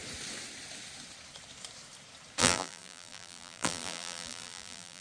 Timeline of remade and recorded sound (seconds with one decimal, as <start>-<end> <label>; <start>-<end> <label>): 0.0-2.4 recorded; 2.4-5.0 remade